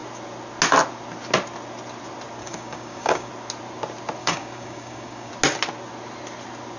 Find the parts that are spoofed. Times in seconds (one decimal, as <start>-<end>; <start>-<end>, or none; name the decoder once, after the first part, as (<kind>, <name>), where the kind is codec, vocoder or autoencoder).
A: 2.4-3.3 (codec, DAC); 4.2-5.3